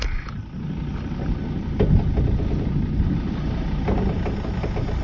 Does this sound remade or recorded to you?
recorded